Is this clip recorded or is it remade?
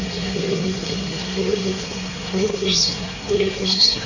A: remade